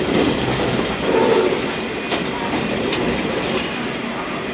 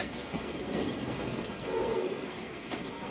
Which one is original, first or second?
first